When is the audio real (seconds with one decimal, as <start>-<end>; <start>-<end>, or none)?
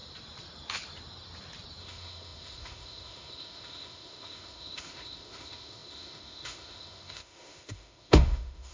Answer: 0.0-1.8